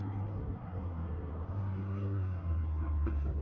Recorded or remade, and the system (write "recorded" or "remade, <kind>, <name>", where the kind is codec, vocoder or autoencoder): remade, codec, SNAC